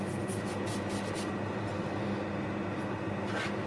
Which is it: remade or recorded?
recorded